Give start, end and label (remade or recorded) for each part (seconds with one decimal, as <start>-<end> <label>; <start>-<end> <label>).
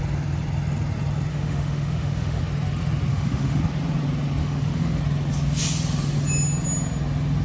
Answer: 0.0-1.3 recorded; 1.3-2.4 remade; 2.4-3.1 recorded; 3.1-3.6 remade; 3.6-4.4 recorded; 4.4-5.0 remade; 5.0-7.4 recorded